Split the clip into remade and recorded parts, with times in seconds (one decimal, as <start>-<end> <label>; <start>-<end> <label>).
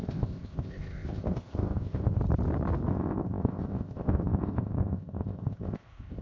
0.0-2.2 remade; 2.2-2.9 recorded; 2.9-6.2 remade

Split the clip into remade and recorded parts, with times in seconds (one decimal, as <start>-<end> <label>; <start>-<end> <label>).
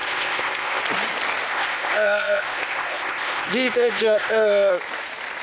0.0-0.8 remade; 0.8-1.5 recorded; 1.5-4.7 remade; 4.7-5.4 recorded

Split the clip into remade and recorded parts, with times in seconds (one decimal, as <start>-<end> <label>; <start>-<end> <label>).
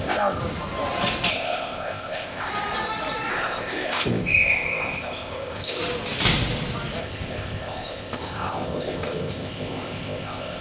0.0-0.4 remade; 0.4-1.3 recorded; 1.3-2.5 remade; 2.5-3.3 recorded; 3.3-5.8 remade; 5.8-7.0 recorded; 7.0-10.6 remade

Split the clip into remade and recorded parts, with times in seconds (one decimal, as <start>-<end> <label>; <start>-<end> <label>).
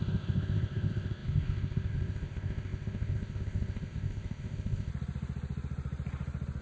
0.0-4.9 remade; 4.9-6.6 recorded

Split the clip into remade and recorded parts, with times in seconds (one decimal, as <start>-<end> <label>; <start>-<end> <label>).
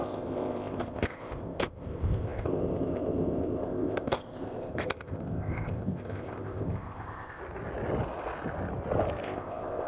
0.0-7.4 remade; 7.4-9.2 recorded; 9.2-9.9 remade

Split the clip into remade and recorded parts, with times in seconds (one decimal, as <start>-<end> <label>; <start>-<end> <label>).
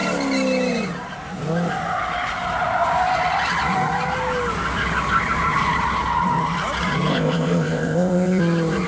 0.0-7.1 recorded; 7.1-8.4 remade; 8.4-8.9 recorded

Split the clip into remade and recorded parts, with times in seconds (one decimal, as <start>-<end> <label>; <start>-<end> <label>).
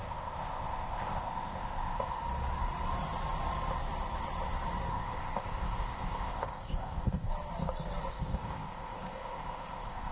0.0-2.2 remade; 2.2-4.9 recorded; 4.9-7.3 remade; 7.3-8.1 recorded; 8.1-10.1 remade